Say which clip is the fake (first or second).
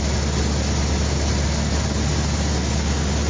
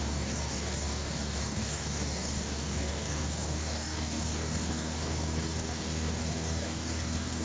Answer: second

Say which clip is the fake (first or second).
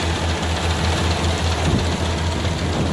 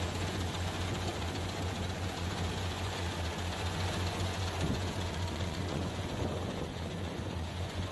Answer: second